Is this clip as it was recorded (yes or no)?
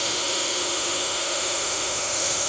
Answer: no